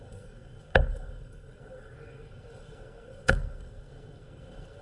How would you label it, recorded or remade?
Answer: remade